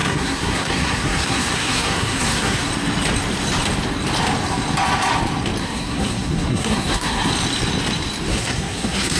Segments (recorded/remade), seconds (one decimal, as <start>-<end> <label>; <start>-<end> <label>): 0.0-2.7 remade; 2.7-5.6 recorded; 5.6-7.3 remade; 7.3-8.3 recorded; 8.3-9.2 remade

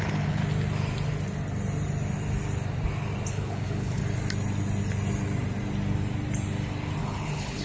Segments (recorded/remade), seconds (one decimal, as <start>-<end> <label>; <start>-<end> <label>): 0.0-0.4 remade; 0.4-3.3 recorded; 3.3-4.0 remade; 4.0-7.0 recorded; 7.0-7.6 remade